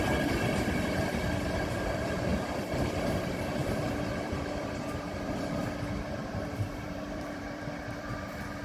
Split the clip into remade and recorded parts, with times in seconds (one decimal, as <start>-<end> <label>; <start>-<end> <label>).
0.0-3.6 recorded; 3.6-5.6 remade; 5.6-6.2 recorded; 6.2-7.6 remade; 7.6-8.6 recorded